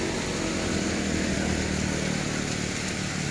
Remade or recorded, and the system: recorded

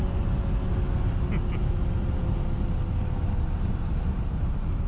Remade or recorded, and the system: recorded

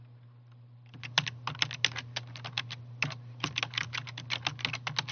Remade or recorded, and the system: recorded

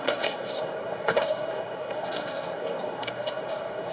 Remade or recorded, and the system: remade, codec, SNAC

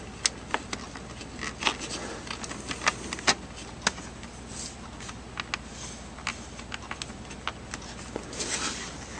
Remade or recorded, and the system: recorded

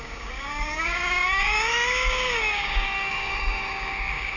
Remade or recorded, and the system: remade, codec, DAC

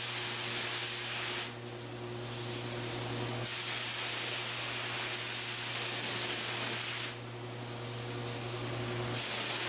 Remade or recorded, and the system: recorded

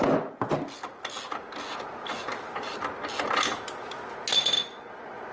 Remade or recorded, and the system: recorded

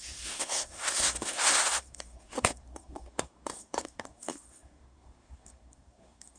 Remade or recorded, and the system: remade, codec, SNAC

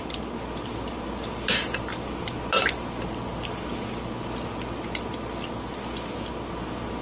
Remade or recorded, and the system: recorded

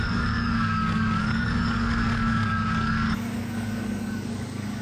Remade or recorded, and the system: remade, codec, DAC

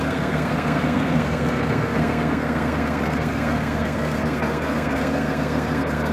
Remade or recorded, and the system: remade, codec, SNAC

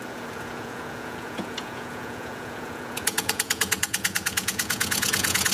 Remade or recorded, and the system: remade, vocoder, Vocos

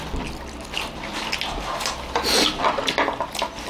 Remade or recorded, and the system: recorded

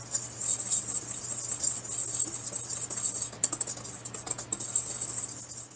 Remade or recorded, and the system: recorded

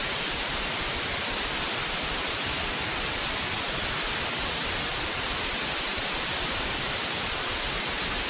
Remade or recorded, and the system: recorded